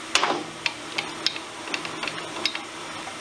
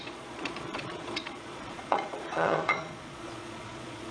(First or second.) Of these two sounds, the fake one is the second